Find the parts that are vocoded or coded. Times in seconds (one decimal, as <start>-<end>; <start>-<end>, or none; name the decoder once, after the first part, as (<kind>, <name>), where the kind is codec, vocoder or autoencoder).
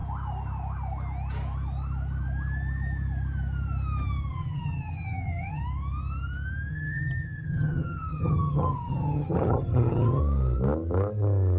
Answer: 4.3-5.6 (vocoder, HiFi-GAN); 6.7-10.2